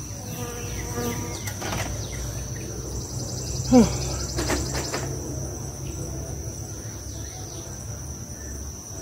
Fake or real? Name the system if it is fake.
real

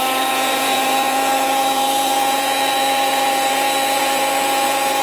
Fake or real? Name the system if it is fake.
fake, vocoder, Vocos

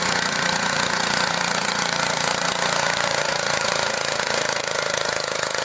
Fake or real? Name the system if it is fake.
fake, vocoder, Vocos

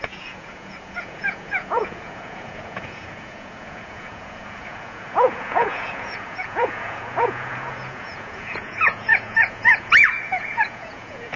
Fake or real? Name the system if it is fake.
fake, vocoder, Vocos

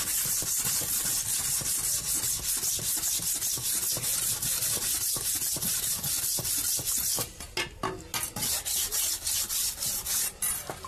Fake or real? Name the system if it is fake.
real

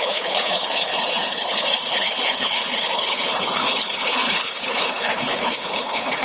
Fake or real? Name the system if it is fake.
fake, codec, HILCodec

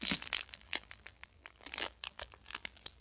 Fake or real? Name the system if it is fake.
fake, vocoder, BigVGAN v2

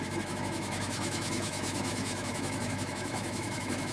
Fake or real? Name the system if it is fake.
fake, autoencoder, DAC-VAE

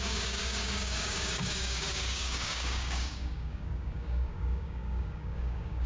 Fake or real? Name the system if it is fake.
fake, codec, DAC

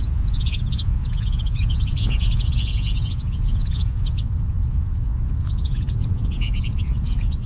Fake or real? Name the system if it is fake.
fake, vocoder, Vocos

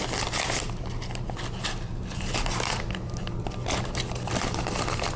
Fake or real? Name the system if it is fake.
real